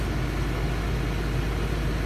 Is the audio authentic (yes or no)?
yes